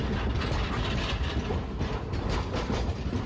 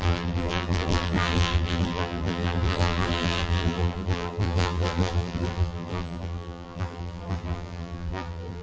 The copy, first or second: second